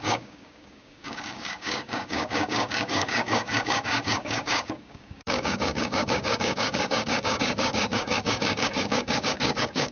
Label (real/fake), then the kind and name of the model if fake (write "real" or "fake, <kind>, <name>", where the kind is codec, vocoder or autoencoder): fake, codec, DAC